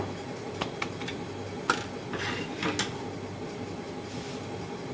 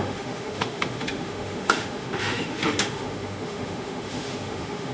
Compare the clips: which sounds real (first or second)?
first